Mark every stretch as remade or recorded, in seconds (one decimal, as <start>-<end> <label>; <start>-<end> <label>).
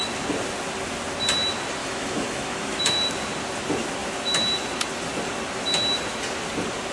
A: 0.0-1.8 recorded; 1.8-2.8 remade; 2.8-6.9 recorded